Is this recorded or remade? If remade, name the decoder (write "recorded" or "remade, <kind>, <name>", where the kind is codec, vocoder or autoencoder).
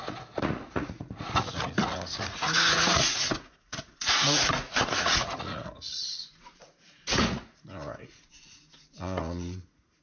remade, vocoder, Vocos